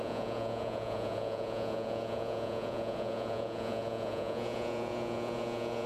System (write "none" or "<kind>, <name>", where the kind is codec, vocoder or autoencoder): vocoder, Vocos